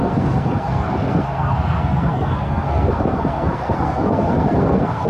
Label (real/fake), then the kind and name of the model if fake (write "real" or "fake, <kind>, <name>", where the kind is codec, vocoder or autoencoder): fake, codec, SNAC